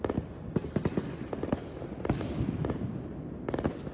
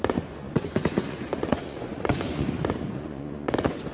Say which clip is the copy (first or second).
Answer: second